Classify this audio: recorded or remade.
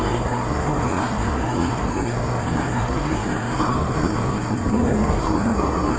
remade